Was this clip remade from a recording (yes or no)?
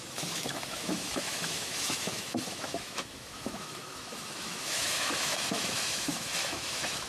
yes